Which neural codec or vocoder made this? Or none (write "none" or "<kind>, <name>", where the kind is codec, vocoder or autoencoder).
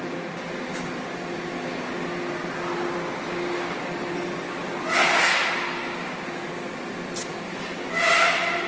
none